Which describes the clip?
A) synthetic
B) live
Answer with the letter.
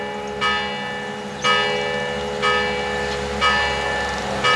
B